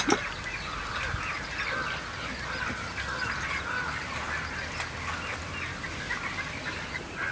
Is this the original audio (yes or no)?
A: yes